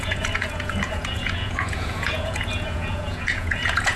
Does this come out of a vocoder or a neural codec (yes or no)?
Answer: yes